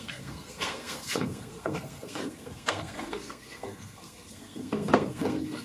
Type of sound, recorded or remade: remade